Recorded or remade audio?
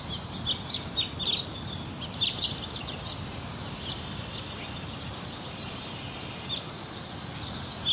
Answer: recorded